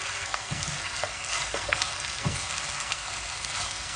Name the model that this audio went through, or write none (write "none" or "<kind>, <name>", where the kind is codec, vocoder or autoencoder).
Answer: codec, SNAC